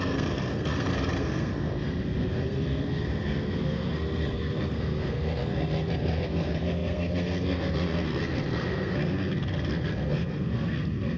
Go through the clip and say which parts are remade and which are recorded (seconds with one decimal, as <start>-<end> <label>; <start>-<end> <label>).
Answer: 0.0-1.5 remade; 1.5-2.0 recorded; 2.0-11.2 remade